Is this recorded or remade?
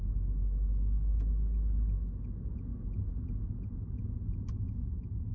recorded